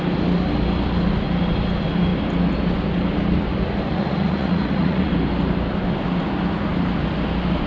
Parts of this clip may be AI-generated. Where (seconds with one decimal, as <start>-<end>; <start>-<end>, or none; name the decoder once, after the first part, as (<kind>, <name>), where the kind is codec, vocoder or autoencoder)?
3.9-5.1 (vocoder, Vocos)